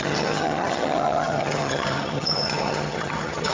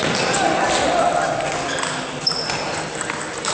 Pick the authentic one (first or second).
second